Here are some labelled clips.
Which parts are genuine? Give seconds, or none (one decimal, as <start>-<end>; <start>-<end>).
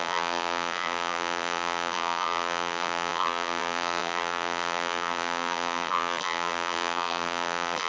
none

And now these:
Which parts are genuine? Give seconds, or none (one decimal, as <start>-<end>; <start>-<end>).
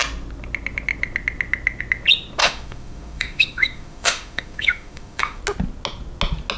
0.0-2.4; 5.4-6.6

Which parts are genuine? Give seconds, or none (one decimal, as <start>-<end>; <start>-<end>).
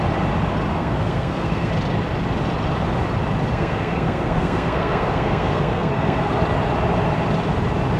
0.0-0.7; 1.7-3.5; 6.3-8.0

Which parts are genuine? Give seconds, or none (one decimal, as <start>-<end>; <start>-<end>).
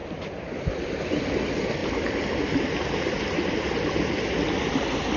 0.0-5.2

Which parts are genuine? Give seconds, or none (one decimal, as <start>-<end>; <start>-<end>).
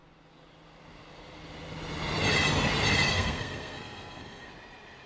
0.0-3.1; 4.5-5.1